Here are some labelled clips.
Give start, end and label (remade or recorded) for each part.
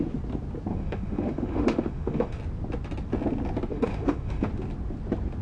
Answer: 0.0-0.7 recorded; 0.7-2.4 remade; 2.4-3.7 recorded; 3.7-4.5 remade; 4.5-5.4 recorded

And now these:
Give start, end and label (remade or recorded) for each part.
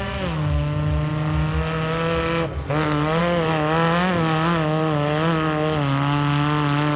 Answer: 0.0-7.0 recorded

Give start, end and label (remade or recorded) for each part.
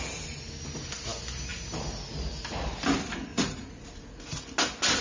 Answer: 0.0-3.3 recorded; 3.3-4.4 remade; 4.4-5.0 recorded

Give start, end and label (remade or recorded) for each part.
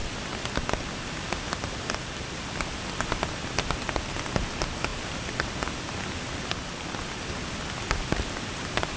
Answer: 0.0-9.0 recorded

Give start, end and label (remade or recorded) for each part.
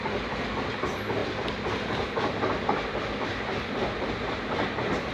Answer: 0.0-5.1 recorded